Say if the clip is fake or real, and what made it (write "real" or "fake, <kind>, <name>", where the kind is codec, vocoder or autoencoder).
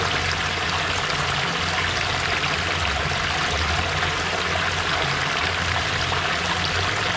real